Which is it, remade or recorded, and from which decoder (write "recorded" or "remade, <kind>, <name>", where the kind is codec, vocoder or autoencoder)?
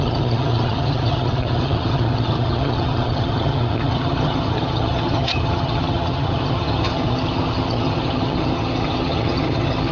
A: remade, vocoder, HiFi-GAN